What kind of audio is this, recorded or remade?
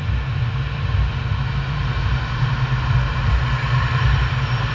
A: recorded